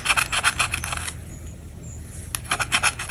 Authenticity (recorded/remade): recorded